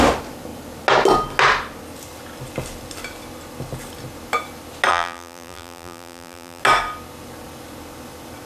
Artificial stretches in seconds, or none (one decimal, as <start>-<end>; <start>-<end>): 4.9-6.6